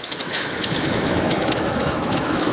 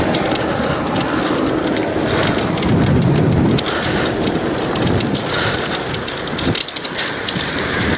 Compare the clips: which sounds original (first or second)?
second